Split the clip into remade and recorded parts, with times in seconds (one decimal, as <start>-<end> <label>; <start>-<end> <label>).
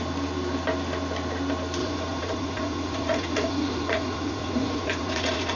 0.0-1.8 recorded; 1.8-5.6 remade